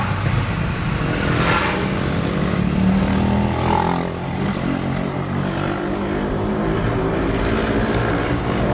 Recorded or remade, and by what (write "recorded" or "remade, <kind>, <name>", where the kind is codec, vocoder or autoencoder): recorded